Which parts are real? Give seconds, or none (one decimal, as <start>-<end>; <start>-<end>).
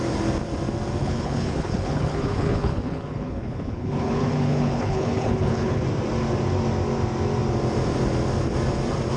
0.0-1.0; 5.8-9.2